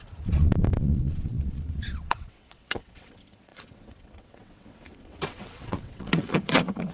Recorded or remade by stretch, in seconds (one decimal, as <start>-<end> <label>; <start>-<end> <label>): 0.0-6.9 remade